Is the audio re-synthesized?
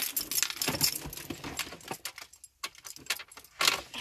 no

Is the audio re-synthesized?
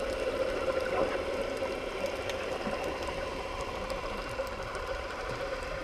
no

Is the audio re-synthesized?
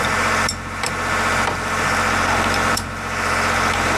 yes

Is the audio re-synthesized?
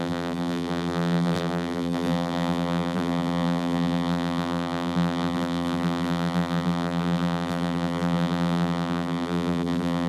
yes